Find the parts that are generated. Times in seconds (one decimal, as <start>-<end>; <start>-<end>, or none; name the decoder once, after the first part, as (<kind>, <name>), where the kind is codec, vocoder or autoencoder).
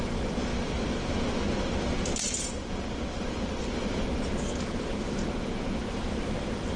0.0-0.5 (vocoder, BigVGAN v2); 4.6-5.2; 5.9-6.8